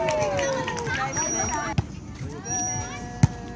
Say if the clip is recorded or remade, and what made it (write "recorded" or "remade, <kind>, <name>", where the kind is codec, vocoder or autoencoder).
recorded